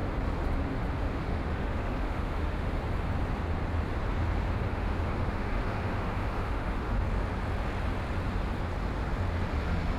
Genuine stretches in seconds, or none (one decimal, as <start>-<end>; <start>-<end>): 0.0-1.2; 2.8-4.7; 7.0-10.0